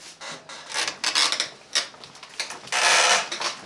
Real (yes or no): yes